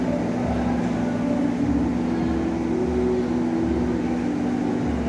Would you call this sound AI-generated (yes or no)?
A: no